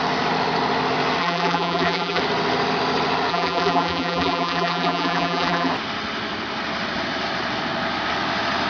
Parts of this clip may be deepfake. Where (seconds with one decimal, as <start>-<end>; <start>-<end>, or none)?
1.2-2.2; 3.3-5.7